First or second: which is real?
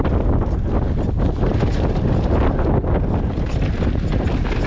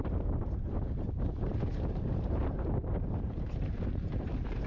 first